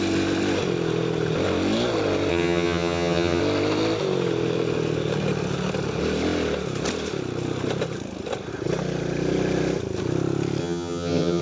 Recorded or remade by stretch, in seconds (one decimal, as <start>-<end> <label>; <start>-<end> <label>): 0.0-2.3 recorded; 2.3-3.4 remade; 3.4-10.6 recorded; 10.6-11.4 remade